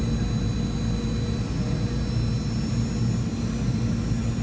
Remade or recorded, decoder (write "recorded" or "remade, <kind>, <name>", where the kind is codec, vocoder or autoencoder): recorded